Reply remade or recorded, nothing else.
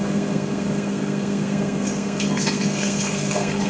remade